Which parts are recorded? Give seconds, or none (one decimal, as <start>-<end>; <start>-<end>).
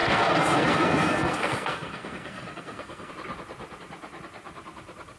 3.1-5.2